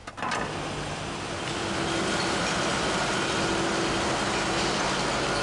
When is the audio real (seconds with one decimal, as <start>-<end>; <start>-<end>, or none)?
0.0-5.4